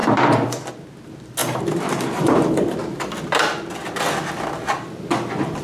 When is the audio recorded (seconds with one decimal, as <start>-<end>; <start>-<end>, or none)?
0.7-1.4; 2.5-5.6